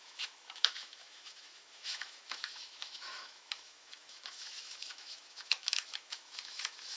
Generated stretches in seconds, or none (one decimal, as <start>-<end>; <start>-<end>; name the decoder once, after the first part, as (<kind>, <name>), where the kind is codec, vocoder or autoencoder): 0.0-7.0 (autoencoder, DAC-VAE)